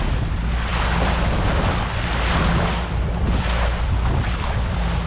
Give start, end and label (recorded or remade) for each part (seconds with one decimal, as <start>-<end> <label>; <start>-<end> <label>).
0.0-5.1 recorded